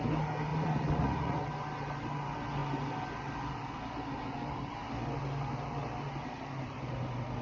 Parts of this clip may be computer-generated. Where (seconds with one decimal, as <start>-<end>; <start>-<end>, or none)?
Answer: 0.5-1.4